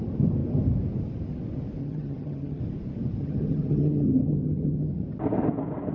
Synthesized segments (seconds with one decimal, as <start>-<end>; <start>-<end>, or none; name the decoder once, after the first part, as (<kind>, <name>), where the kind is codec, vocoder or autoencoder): 1.8-2.6 (vocoder, HiFi-GAN); 3.2-4.9